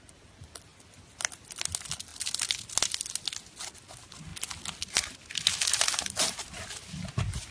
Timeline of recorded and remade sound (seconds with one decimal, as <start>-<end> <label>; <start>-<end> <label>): 0.0-7.5 recorded